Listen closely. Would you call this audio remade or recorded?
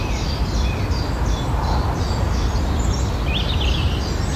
recorded